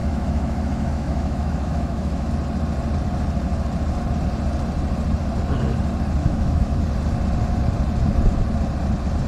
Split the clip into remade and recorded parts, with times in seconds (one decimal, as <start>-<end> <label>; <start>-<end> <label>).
0.0-2.3 remade; 2.3-6.2 recorded; 6.2-6.8 remade; 6.8-9.3 recorded